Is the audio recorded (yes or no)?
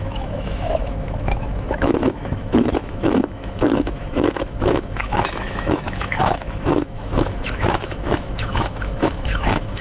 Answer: no